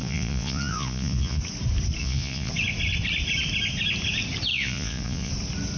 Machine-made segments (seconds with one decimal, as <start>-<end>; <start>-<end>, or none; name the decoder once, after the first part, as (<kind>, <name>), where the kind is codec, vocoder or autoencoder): 0.0-1.4 (vocoder, Vocos); 2.0-2.5; 4.5-5.3